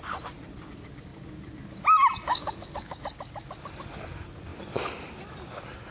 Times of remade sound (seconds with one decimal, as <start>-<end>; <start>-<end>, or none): 2.3-3.0